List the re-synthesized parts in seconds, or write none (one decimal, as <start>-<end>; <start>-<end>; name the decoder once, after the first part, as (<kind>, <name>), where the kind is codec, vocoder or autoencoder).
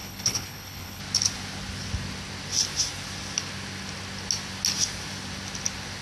0.0-1.0 (codec, HILCodec)